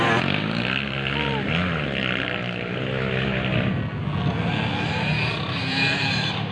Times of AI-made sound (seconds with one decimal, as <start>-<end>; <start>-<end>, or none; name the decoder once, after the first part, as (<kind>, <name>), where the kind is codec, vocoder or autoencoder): 5.4-6.5 (vocoder, BigVGAN v2)